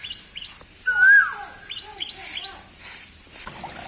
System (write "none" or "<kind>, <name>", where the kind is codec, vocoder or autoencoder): none